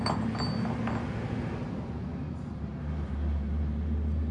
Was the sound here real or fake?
real